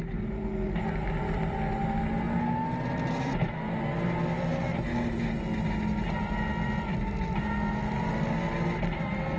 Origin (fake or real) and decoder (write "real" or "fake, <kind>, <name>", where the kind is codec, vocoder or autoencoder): real